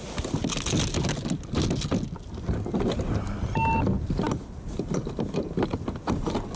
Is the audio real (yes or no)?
yes